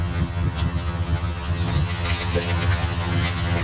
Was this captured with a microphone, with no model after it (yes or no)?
no